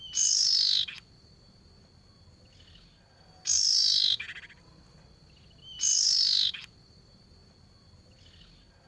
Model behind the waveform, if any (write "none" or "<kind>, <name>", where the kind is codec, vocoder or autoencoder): none